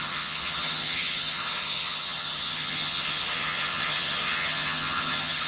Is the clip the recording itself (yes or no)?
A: no